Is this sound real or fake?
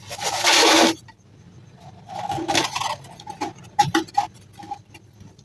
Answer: real